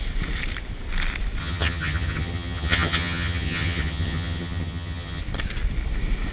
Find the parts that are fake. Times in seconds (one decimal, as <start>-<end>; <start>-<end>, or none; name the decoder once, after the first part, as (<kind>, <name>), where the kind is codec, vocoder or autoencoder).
1.4-5.2 (vocoder, HiFi-GAN)